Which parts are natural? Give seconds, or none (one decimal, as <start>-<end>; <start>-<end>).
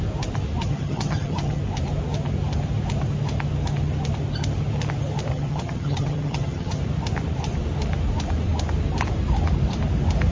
0.0-0.6; 1.6-5.3; 6.8-10.3